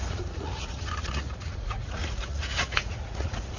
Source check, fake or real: fake